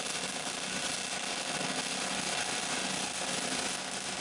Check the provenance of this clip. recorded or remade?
recorded